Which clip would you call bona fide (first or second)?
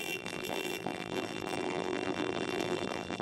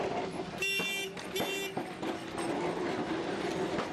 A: second